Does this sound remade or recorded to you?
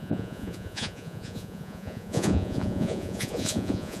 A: remade